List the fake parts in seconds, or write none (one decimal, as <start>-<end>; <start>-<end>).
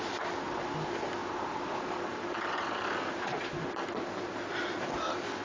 1.2-4.4